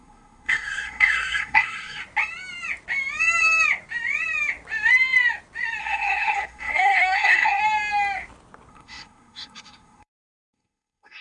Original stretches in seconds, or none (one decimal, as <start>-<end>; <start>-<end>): 2.0-5.8; 7.6-8.7